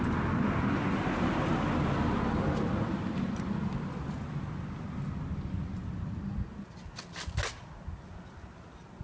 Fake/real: real